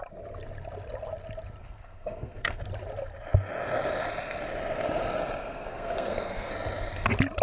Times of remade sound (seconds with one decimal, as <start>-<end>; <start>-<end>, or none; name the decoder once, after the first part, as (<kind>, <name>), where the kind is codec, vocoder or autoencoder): 1.6-2.6 (codec, SNAC); 5.4-6.5